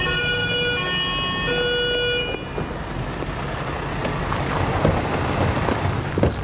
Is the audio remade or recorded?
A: recorded